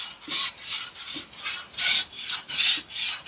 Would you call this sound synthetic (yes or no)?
no